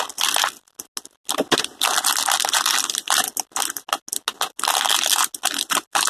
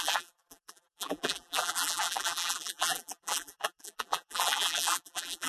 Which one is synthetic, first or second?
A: second